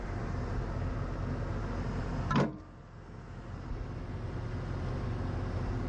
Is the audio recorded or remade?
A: recorded